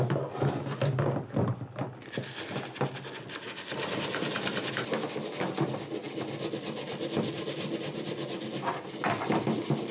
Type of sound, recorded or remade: recorded